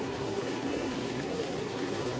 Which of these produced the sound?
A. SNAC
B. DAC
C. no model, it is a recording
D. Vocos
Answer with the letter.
A